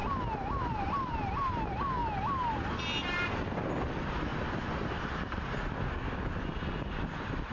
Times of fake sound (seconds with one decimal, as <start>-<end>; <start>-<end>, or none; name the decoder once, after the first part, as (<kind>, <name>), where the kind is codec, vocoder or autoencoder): 0.6-2.0 (vocoder, BigVGAN v2); 3.9-4.3; 6.8-7.5